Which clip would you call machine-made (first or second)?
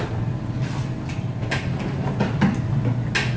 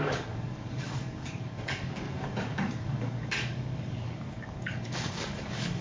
second